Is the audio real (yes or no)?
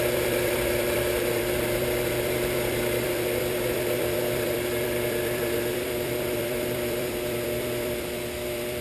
no